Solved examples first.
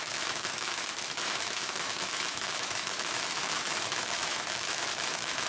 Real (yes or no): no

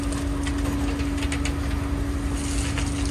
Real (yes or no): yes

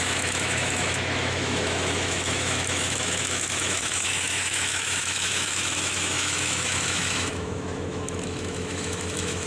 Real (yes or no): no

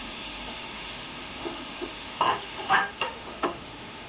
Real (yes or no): no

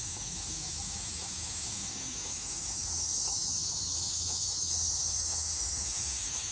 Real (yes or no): no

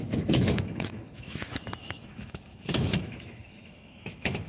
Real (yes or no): no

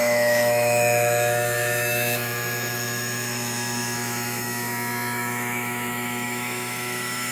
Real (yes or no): no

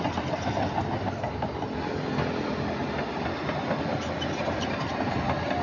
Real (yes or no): yes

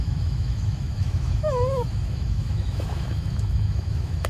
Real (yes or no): no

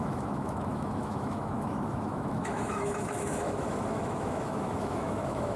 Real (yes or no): no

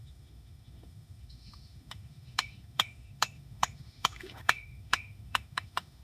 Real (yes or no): no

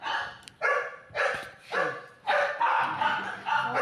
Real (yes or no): yes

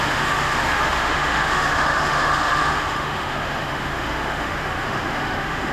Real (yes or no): no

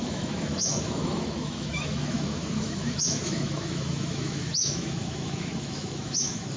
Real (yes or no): no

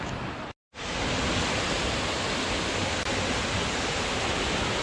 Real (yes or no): yes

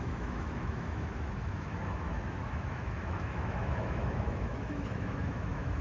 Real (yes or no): no